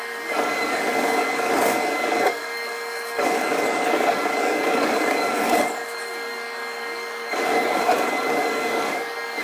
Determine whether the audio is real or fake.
fake